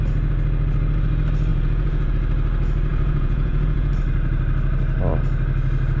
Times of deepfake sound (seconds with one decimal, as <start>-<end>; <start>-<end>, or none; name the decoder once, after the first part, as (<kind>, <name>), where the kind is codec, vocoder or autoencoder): 1.5-2.1 (vocoder, Vocos); 2.9-3.9